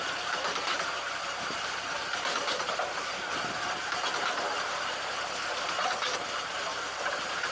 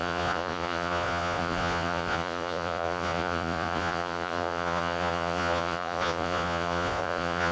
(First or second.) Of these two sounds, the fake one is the second